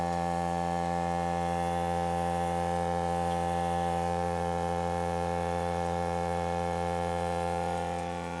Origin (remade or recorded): remade